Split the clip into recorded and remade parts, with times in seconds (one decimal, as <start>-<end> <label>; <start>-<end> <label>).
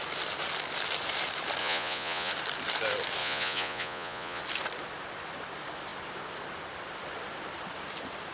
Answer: 0.0-1.6 recorded; 1.6-2.3 remade; 2.3-3.2 recorded; 3.2-4.4 remade; 4.4-8.3 recorded